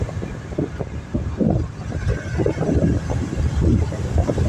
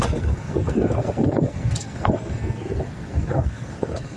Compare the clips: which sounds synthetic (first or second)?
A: second